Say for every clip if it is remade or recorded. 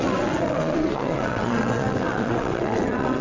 remade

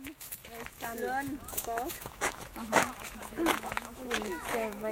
remade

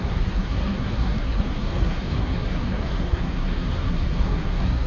remade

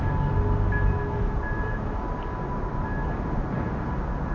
recorded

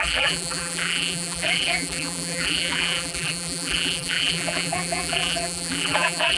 remade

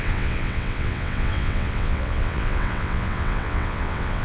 remade